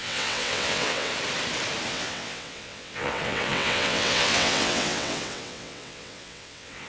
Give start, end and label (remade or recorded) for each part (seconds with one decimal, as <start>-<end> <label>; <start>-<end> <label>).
0.0-1.1 remade; 1.1-1.9 recorded; 1.9-6.9 remade